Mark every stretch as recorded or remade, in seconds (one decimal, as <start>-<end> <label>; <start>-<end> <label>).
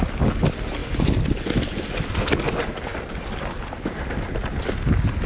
0.0-2.9 recorded; 2.9-4.3 remade; 4.3-5.3 recorded